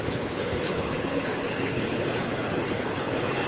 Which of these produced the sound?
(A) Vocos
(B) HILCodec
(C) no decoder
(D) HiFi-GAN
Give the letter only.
B